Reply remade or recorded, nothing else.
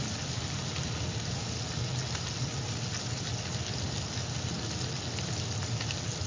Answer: recorded